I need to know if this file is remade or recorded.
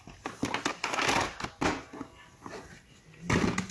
recorded